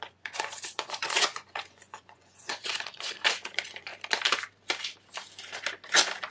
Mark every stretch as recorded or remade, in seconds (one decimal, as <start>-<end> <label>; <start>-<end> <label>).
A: 0.0-3.9 remade; 3.9-6.3 recorded